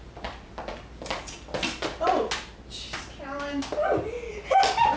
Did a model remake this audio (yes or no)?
no